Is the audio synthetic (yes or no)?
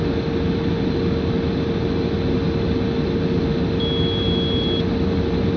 no